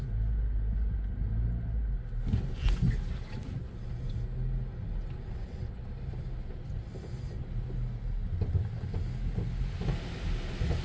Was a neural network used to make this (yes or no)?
no